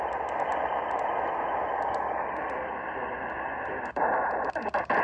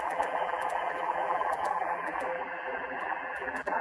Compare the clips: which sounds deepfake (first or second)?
second